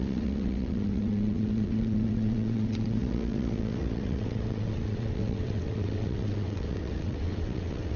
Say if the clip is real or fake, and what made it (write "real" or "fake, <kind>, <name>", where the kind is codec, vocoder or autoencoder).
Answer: fake, vocoder, WaveNeXt